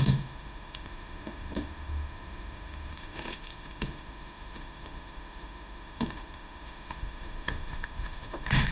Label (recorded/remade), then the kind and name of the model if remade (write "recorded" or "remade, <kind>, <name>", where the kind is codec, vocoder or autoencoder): remade, autoencoder, DAC-VAE